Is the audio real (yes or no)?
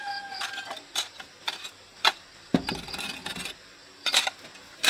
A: yes